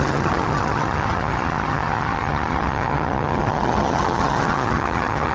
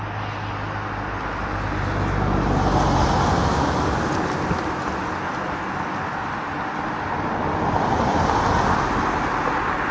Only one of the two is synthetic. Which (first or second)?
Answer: first